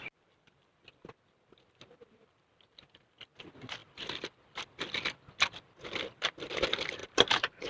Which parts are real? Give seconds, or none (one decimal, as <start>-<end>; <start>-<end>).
0.0-7.0